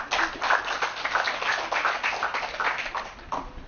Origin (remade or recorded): recorded